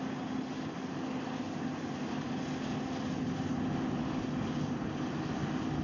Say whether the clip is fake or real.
real